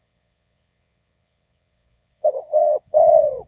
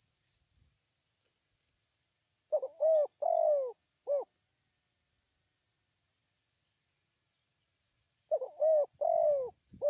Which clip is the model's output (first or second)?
first